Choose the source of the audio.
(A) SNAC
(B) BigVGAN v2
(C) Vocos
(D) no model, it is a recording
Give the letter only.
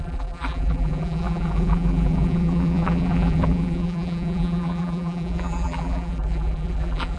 B